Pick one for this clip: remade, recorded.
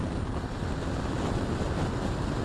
recorded